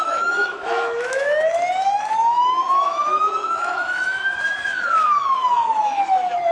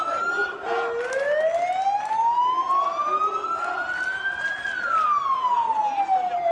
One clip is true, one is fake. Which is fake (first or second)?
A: first